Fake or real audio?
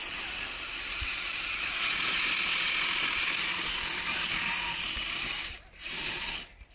real